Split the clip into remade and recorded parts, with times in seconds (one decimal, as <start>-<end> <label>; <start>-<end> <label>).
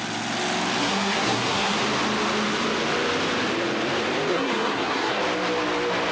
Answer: 0.0-0.8 recorded; 0.8-1.8 remade; 1.8-4.3 recorded; 4.3-5.2 remade; 5.2-6.1 recorded